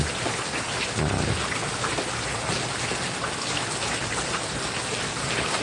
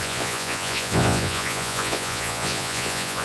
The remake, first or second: second